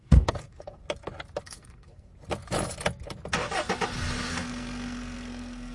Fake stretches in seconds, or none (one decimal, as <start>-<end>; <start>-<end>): 0.0-0.8; 1.4-2.1; 4.3-5.7